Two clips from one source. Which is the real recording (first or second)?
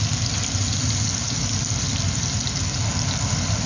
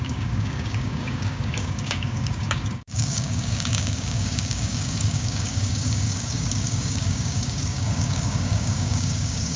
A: first